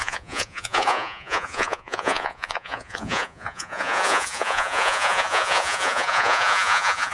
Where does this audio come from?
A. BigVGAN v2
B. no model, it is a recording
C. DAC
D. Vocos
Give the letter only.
D